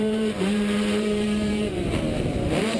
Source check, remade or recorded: remade